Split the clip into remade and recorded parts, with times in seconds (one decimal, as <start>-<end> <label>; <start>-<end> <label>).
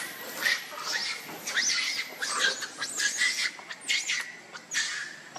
0.0-5.4 recorded